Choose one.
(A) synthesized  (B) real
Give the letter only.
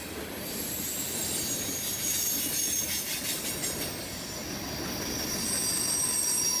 B